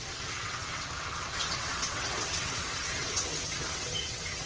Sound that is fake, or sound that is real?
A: fake